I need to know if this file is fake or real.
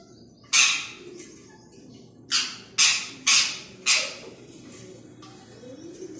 real